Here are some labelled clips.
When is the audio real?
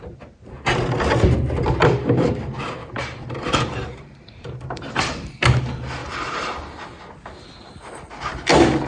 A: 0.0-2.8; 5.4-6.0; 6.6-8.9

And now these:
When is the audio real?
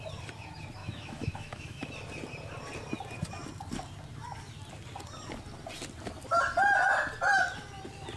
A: 0.0-0.8; 1.9-8.2